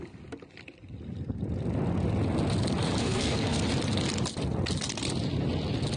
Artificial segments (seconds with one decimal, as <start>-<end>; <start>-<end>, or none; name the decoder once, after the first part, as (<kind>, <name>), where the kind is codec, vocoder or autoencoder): 3.0-3.6 (codec, SNAC)